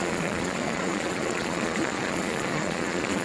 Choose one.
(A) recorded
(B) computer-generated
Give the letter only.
B